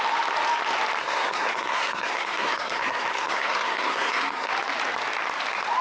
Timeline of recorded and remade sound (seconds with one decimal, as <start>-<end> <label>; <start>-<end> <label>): 0.0-1.0 recorded; 1.0-4.5 remade; 4.5-5.8 recorded